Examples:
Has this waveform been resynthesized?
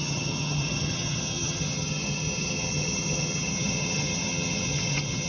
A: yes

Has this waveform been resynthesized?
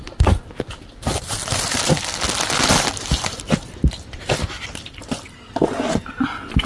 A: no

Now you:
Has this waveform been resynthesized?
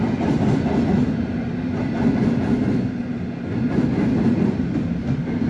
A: no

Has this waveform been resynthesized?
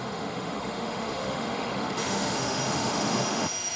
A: yes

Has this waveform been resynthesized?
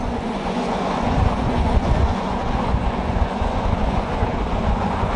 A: yes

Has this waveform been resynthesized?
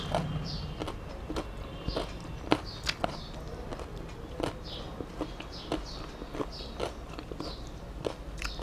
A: no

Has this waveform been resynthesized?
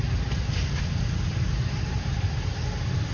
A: no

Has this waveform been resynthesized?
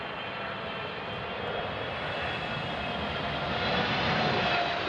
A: no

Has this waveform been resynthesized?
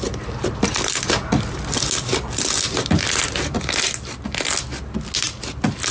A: no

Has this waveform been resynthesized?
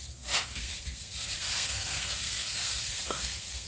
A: yes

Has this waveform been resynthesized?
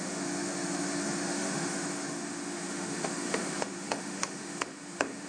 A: yes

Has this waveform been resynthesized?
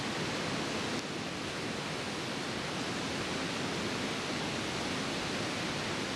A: no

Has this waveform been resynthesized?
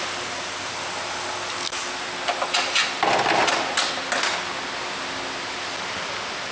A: no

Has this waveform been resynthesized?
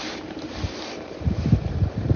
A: yes